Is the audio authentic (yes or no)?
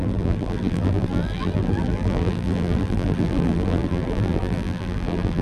no